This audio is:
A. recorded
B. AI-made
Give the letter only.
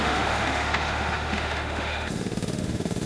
B